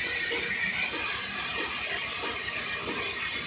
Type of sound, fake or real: real